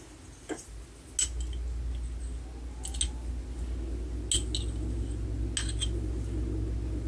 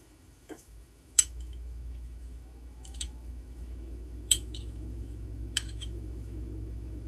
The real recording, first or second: first